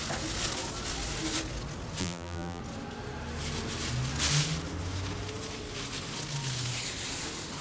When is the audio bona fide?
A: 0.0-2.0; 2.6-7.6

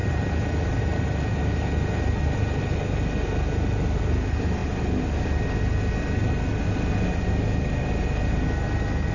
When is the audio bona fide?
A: 2.2-9.1

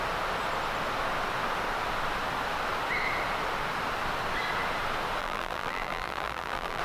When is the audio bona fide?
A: 0.0-5.2

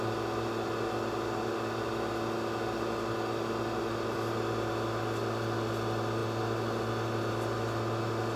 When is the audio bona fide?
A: 0.0-8.4

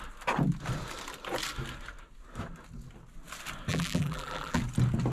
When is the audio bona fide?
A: 0.0-3.7; 4.6-5.1

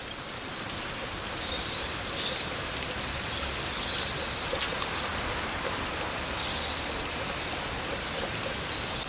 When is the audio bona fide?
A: 2.8-5.1; 7.0-9.1

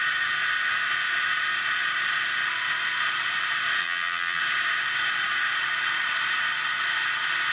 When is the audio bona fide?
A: 0.0-3.8; 4.4-7.5